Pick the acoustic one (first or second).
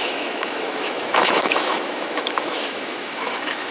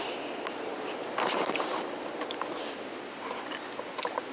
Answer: second